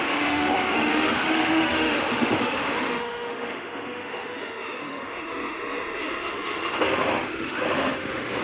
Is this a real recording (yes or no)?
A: no